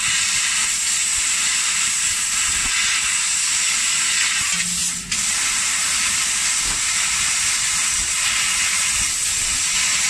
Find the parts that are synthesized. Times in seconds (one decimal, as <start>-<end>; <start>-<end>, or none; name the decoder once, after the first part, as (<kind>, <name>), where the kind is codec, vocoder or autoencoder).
none